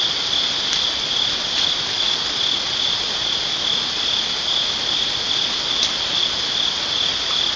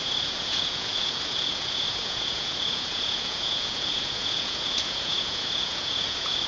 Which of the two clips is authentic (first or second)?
first